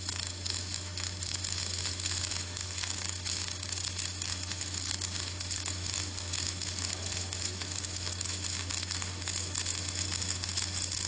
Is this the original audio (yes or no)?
no